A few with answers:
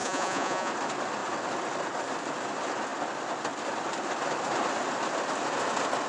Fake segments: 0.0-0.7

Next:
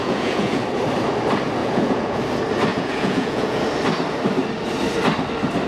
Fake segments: 0.0-0.6; 1.6-2.2; 2.7-3.6

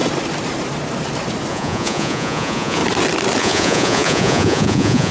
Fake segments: 1.5-2.8; 3.4-5.1

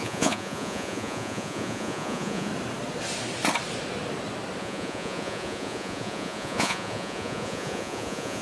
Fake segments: 0.0-2.5; 4.6-8.4

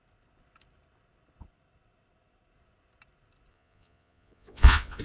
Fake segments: 3.5-5.0

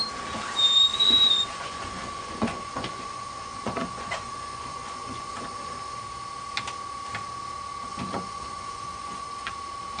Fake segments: 0.9-6.0; 7.9-9.5